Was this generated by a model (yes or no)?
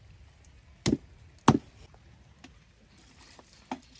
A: no